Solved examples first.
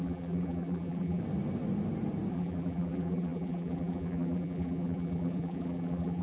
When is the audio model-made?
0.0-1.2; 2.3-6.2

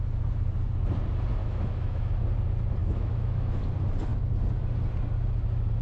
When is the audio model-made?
1.4-2.1; 2.8-3.6

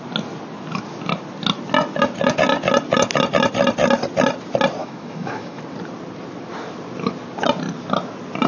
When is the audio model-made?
4.8-5.6

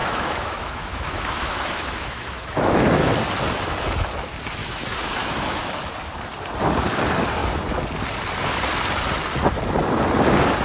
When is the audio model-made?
0.0-3.1; 4.6-5.6

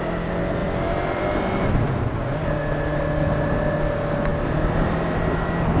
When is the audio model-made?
0.6-1.7